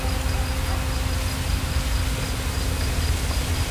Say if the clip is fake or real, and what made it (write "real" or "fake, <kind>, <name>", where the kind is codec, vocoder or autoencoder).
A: real